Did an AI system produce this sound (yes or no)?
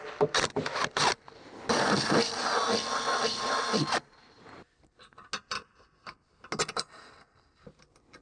no